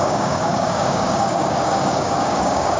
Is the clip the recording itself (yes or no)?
no